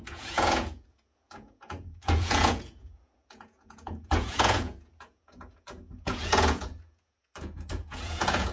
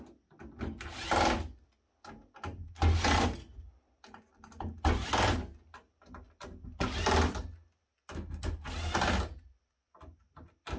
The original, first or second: second